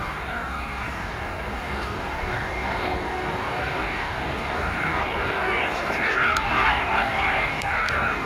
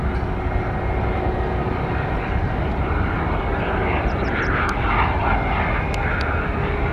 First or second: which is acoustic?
second